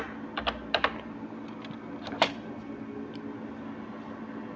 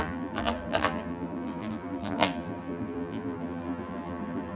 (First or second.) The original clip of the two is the first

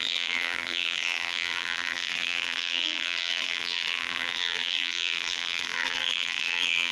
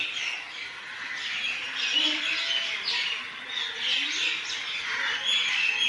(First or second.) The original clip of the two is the second